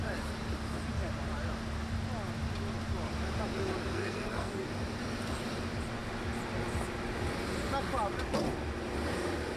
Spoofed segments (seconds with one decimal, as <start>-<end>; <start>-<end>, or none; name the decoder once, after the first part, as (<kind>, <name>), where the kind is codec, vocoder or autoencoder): 3.9-4.7 (codec, SNAC)